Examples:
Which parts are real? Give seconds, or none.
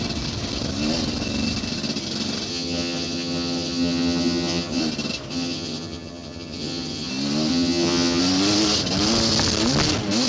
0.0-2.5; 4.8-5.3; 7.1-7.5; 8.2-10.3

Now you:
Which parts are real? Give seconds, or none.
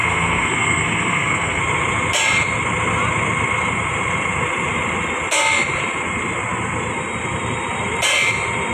1.6-8.7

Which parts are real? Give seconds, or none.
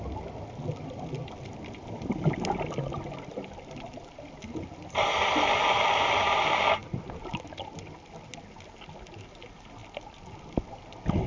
0.0-11.3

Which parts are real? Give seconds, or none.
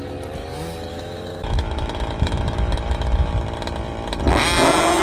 0.0-0.9; 3.3-5.0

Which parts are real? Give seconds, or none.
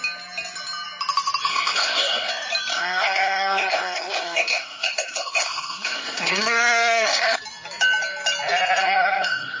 0.0-1.5; 2.3-2.7; 7.4-8.8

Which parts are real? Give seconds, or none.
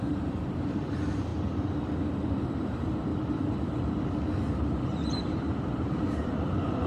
1.3-2.4; 3.1-4.5